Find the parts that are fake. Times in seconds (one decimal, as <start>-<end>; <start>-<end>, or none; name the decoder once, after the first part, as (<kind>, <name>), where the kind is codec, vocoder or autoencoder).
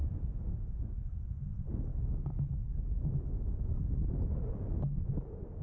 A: 0.0-0.9 (autoencoder, DAC-VAE); 1.9-5.6